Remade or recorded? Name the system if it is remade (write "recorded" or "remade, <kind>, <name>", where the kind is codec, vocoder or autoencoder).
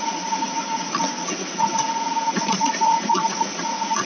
remade, vocoder, Vocos